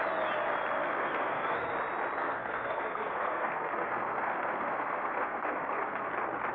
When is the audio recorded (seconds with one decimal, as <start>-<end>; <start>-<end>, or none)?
0.0-0.8; 1.7-2.2; 6.1-6.5